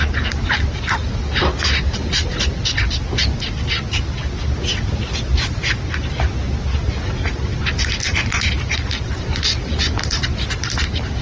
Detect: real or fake real